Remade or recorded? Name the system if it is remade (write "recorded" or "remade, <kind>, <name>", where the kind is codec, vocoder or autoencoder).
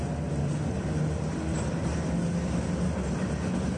recorded